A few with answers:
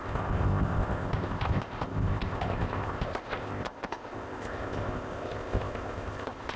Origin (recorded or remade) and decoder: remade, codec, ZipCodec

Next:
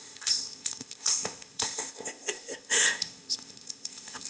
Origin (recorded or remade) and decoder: remade, codec, ZipCodec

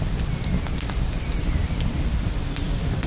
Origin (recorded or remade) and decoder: recorded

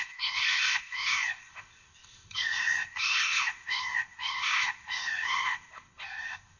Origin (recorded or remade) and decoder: remade, codec, ZipCodec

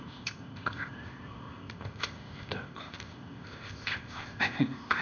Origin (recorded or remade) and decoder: remade, codec, ZipCodec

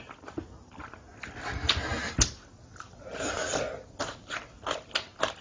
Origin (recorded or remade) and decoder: recorded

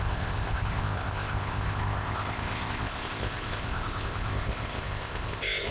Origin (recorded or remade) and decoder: remade, codec, ZipCodec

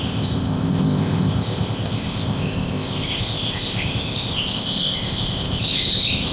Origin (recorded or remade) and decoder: remade, codec, ZipCodec